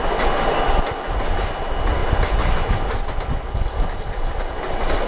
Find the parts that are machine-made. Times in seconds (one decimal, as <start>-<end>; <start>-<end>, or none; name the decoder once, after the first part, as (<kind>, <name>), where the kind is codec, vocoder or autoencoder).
none

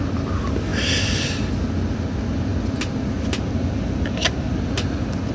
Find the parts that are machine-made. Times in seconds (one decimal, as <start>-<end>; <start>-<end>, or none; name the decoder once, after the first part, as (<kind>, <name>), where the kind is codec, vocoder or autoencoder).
none

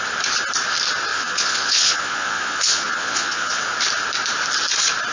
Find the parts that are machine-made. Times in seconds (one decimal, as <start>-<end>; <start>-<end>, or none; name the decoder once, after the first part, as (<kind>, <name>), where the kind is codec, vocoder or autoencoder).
1.1-3.6 (vocoder, Vocos)

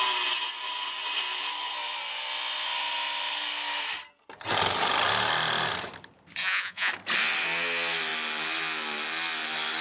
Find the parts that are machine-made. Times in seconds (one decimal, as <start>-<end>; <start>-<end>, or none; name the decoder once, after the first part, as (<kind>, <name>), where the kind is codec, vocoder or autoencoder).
6.4-6.9 (vocoder, Vocos)

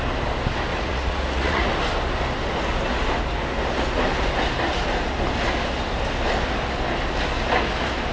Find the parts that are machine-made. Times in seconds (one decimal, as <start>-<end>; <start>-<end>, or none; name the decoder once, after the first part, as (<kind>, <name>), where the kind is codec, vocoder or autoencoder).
0.7-1.7 (vocoder, Vocos)

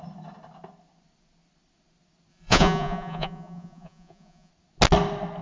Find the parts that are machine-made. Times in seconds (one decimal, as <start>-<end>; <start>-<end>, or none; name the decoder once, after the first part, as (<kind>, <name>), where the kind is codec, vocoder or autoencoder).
2.3-4.5 (vocoder, Vocos)